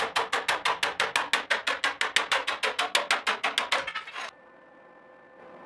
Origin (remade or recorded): recorded